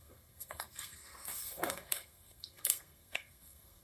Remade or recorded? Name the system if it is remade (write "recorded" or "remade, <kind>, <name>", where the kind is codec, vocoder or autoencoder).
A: remade, codec, SNAC